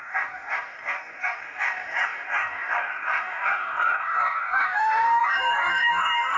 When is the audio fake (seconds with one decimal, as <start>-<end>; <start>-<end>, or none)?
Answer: 0.0-6.4